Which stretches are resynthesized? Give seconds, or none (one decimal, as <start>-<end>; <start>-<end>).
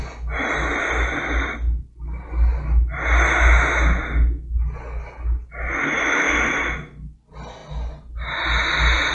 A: none